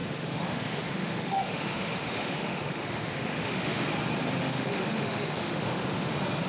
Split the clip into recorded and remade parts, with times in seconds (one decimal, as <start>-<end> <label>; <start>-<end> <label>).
0.0-3.9 remade; 3.9-4.4 recorded; 4.4-6.1 remade; 6.1-6.5 recorded